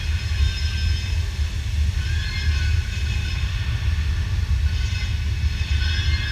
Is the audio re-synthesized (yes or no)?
no